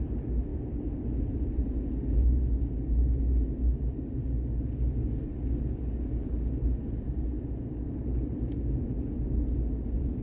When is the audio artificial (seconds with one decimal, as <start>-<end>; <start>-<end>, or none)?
none